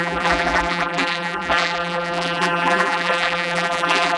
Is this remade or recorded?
remade